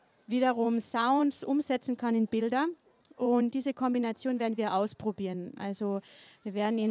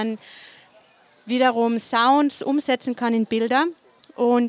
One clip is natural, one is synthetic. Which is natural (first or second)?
second